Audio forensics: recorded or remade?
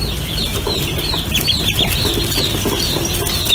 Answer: recorded